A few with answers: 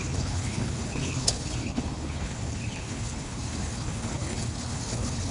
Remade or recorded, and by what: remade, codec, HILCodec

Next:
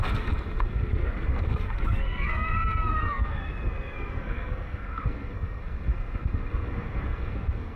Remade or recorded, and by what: remade, codec, SNAC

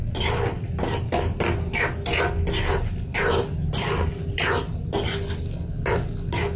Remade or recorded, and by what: recorded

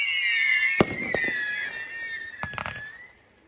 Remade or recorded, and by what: recorded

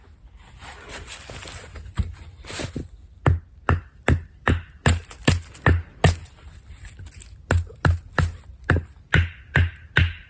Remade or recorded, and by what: recorded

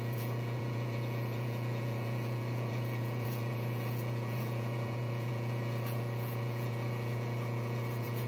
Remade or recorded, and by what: remade, vocoder, Vocos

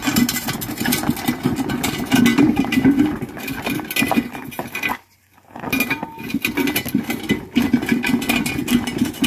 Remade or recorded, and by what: recorded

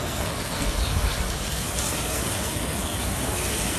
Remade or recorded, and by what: remade, codec, SNAC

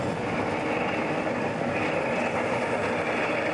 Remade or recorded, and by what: recorded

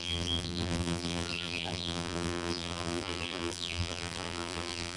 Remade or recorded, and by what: remade, vocoder, BigVGAN v2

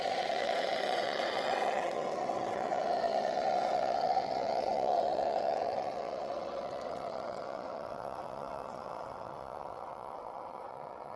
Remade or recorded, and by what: remade, vocoder, WaveNeXt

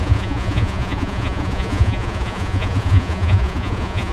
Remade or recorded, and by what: remade, vocoder, Vocos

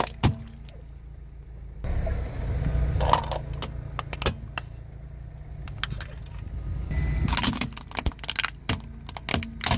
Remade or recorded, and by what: recorded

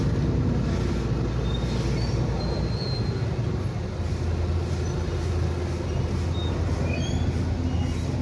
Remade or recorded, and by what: recorded